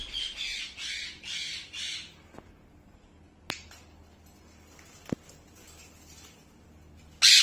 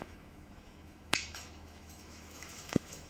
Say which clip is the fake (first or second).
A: second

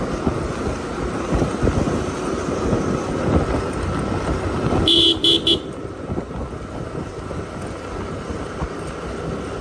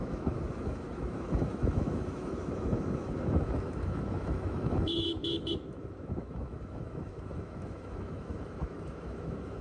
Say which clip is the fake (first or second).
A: second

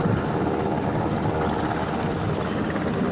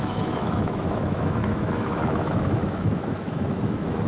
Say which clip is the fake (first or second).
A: second